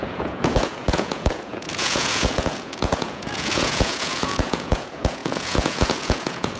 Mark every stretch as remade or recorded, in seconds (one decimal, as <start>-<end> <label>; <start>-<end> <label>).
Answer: 0.0-6.6 remade